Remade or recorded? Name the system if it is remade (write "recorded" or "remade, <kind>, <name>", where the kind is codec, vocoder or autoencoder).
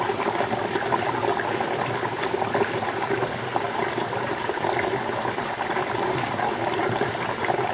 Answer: recorded